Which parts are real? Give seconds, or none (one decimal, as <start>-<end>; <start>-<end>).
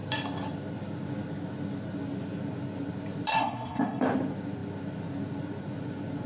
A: 0.0-3.3; 4.0-6.3